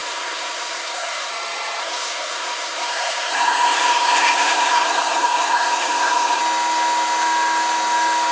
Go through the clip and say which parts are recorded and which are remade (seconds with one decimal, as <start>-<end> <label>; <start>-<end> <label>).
0.0-1.3 remade; 1.3-1.8 recorded; 1.8-6.4 remade; 6.4-8.3 recorded